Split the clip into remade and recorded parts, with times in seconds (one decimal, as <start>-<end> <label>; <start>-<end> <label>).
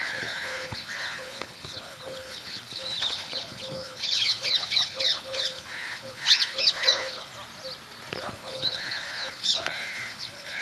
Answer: 0.0-7.3 remade; 7.3-8.2 recorded; 8.2-10.6 remade